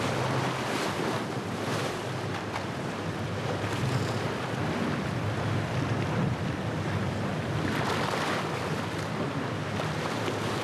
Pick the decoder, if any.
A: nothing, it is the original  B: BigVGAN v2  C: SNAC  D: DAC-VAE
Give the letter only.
A